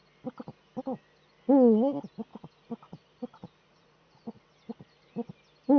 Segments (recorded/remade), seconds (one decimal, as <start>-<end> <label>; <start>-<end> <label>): 0.0-2.3 recorded; 2.3-5.3 remade; 5.3-5.8 recorded